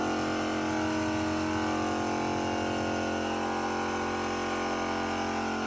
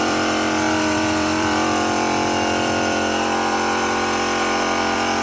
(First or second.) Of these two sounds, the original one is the first